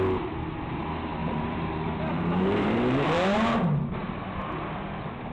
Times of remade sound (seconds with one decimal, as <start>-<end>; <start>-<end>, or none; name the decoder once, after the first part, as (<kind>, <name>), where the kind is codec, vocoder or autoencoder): 1.2-3.6 (vocoder, BigVGAN v2)